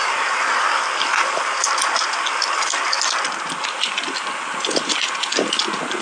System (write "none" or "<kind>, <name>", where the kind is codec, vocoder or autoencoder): none